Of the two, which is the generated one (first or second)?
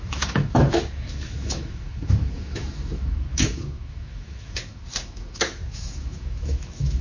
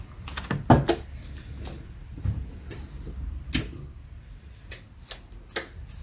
first